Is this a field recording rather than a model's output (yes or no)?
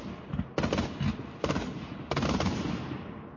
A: yes